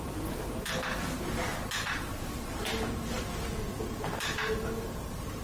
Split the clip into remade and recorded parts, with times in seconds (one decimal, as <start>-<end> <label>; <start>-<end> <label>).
0.0-5.4 recorded